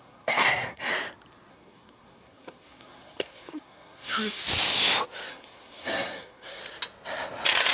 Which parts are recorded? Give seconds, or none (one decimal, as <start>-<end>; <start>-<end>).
0.9-1.5; 4.4-5.3; 6.6-7.7